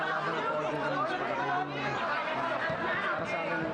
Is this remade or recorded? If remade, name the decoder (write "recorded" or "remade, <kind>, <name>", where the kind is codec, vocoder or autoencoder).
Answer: recorded